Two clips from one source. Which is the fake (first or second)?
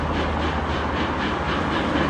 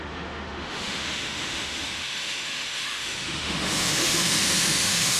second